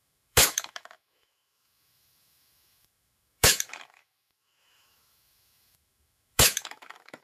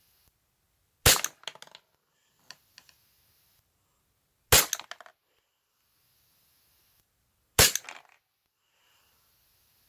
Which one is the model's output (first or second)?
first